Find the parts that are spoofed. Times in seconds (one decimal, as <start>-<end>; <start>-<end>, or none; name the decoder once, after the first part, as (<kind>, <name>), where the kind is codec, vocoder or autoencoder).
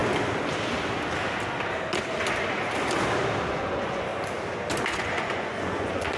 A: 3.5-4.1 (vocoder, Vocos); 4.9-6.2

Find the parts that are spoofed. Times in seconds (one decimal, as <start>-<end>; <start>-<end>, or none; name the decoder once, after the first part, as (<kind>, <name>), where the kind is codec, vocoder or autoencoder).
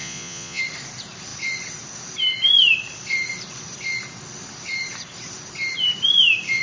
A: 0.0-0.6 (vocoder, Vocos)